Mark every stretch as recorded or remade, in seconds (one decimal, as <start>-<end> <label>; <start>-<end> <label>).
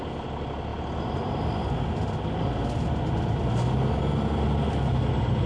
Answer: 0.0-5.5 recorded